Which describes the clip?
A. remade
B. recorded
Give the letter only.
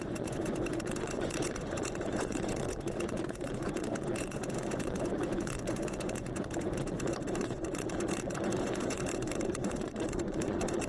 A